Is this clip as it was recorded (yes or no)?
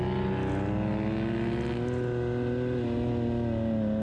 yes